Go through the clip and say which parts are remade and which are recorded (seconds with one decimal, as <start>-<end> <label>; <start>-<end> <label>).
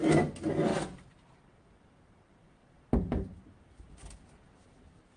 0.0-5.2 recorded